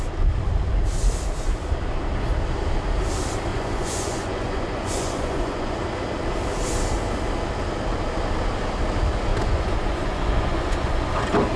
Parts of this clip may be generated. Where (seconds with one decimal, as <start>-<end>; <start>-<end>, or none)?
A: 3.5-5.8; 9.3-11.1